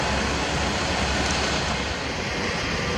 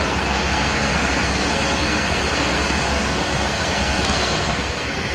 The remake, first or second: second